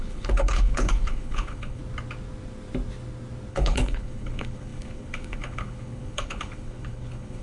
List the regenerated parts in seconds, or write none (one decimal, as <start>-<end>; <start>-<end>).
0.0-1.8; 3.5-7.4